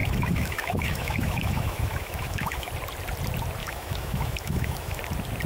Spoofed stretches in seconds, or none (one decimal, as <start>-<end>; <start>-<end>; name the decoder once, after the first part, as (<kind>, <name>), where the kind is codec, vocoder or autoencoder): 0.0-2.7 (autoencoder, DAC-VAE); 3.6-5.0